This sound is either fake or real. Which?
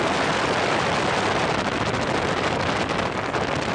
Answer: real